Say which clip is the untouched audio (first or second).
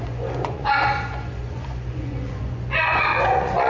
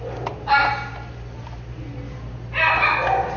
second